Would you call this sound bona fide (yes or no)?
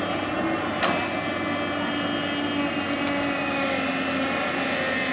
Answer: yes